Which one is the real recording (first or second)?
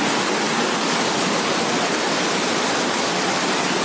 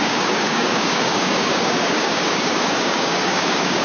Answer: first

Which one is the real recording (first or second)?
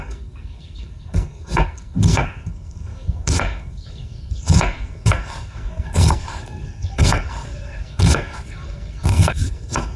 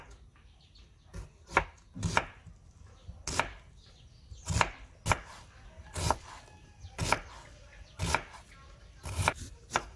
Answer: second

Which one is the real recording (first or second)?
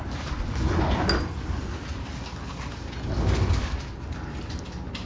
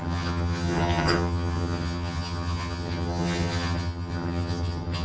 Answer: first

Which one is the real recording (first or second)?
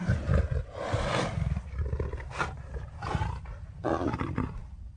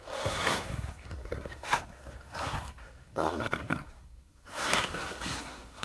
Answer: first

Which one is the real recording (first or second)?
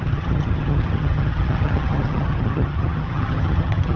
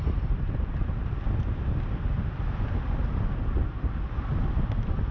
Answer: second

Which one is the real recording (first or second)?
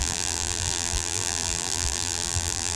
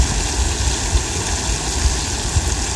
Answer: second